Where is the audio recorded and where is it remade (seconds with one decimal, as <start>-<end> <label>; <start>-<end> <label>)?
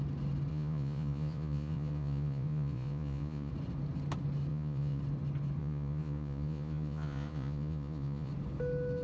0.0-0.5 recorded; 0.5-3.5 remade; 3.5-4.5 recorded; 4.5-5.0 remade; 5.0-5.6 recorded; 5.6-8.3 remade; 8.3-9.0 recorded